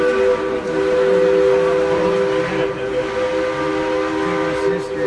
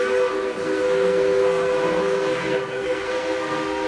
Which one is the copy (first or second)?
second